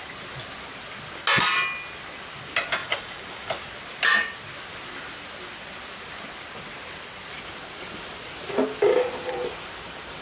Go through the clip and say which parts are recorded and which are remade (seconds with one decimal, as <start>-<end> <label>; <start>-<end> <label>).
0.0-2.8 recorded; 2.8-3.5 remade; 3.5-10.2 recorded